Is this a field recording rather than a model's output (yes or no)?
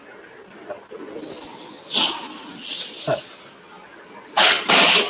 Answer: yes